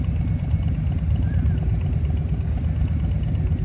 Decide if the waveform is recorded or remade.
recorded